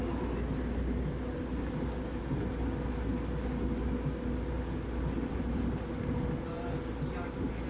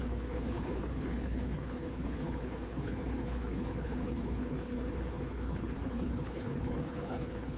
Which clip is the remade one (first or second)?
second